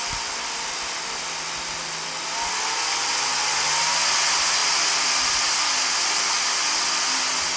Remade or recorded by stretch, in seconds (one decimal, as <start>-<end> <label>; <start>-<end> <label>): 0.0-7.6 recorded